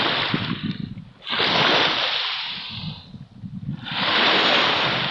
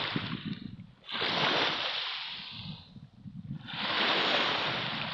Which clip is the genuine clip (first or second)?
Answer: first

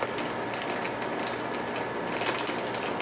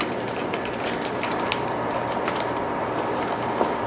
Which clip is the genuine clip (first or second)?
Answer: first